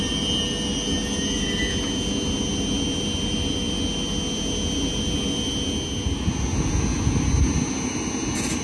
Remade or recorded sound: recorded